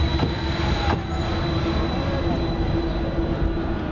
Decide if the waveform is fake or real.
real